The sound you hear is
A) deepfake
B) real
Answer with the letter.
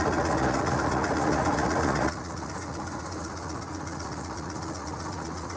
A